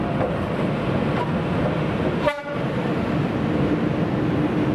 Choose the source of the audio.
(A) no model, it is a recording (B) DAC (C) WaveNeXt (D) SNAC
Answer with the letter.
A